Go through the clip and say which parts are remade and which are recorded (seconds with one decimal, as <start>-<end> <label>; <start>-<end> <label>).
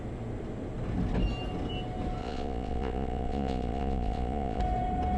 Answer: 0.0-2.2 recorded; 2.2-4.6 remade; 4.6-5.2 recorded